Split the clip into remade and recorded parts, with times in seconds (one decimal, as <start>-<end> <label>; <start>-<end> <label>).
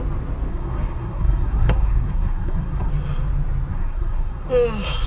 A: 0.0-0.5 recorded; 0.5-2.9 remade; 2.9-3.7 recorded; 3.7-4.5 remade; 4.5-5.1 recorded